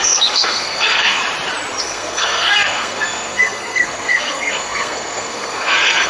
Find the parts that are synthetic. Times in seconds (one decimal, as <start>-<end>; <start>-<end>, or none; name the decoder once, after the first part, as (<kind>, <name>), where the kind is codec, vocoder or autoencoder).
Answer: 0.0-1.2 (codec, SNAC); 1.8-6.1